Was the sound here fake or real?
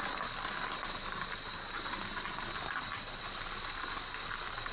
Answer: real